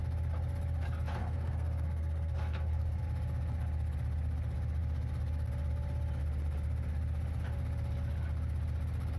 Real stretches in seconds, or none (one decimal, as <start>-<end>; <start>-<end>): 0.0-1.2; 3.0-9.2